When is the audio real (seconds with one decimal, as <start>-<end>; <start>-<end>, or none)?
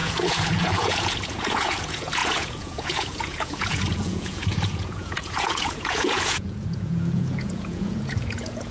none